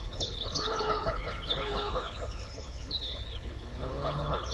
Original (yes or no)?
no